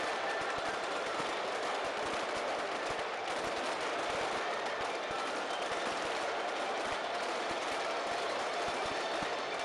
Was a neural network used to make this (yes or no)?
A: no